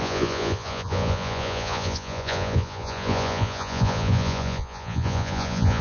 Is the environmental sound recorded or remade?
remade